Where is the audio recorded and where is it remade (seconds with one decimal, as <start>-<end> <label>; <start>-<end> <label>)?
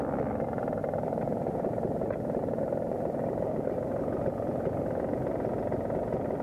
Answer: 0.0-0.8 recorded; 0.8-4.0 remade; 4.0-6.4 recorded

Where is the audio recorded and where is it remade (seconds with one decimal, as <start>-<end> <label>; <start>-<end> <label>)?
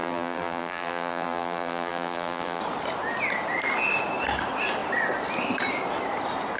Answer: 0.0-2.6 remade; 2.6-6.6 recorded